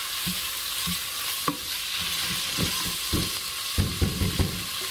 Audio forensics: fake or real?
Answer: real